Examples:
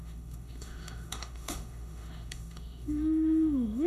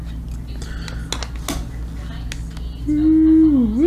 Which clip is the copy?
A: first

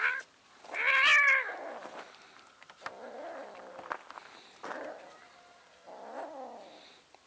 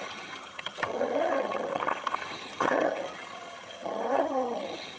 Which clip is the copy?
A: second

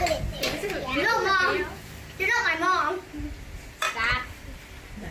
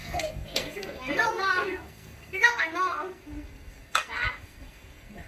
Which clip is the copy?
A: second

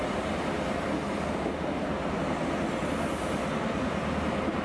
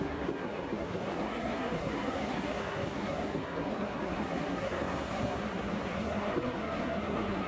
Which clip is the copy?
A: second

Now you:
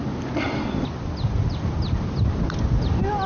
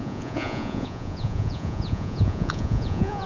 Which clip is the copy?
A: second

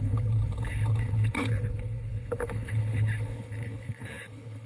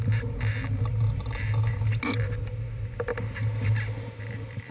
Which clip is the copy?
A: first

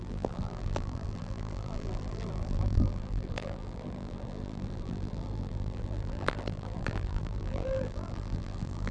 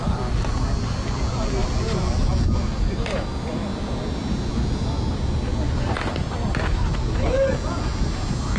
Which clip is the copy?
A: first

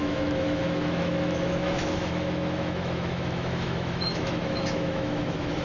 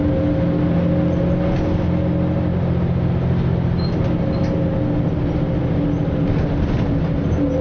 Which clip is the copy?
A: first